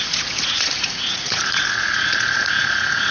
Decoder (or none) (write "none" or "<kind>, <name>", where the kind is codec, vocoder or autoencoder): vocoder, Vocos